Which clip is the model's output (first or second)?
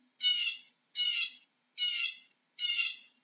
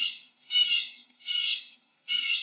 second